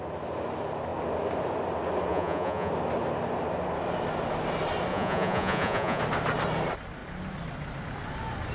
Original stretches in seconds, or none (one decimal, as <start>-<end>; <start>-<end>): 0.0-2.1; 2.7-4.9; 6.0-8.5